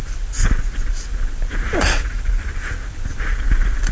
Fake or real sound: real